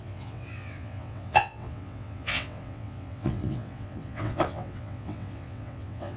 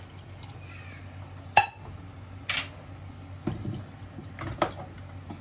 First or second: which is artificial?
first